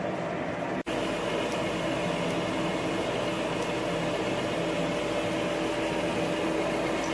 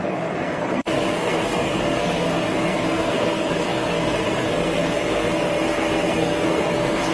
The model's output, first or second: second